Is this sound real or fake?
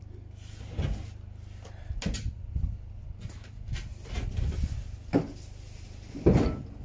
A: real